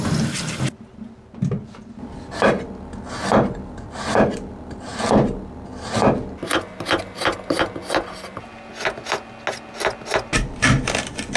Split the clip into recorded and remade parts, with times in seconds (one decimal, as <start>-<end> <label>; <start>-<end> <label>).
0.0-11.4 recorded